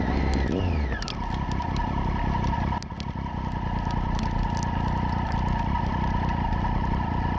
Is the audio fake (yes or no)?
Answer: no